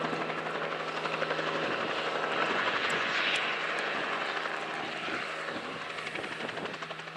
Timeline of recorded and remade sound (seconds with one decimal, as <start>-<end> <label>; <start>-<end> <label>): 0.0-2.4 recorded; 2.4-4.3 remade; 4.3-7.2 recorded